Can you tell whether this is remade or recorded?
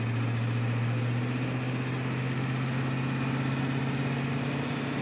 recorded